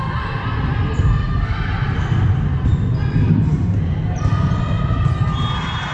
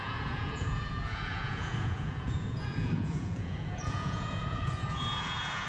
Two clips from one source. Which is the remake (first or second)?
second